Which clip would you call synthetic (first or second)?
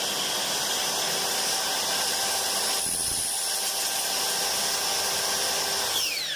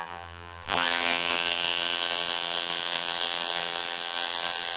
second